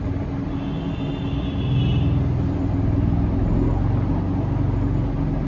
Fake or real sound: real